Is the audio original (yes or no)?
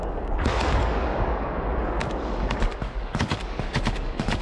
no